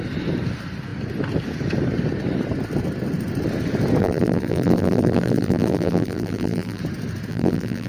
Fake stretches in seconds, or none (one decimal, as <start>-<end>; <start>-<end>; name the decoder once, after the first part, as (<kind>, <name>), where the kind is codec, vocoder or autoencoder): 4.0-6.8 (vocoder, BigVGAN v2); 7.3-7.9